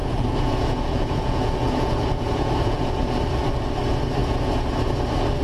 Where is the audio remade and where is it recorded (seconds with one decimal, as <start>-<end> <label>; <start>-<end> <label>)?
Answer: 0.0-3.2 remade; 3.2-4.2 recorded; 4.2-4.9 remade; 4.9-5.4 recorded